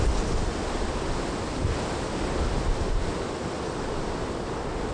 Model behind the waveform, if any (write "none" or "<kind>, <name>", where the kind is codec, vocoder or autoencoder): none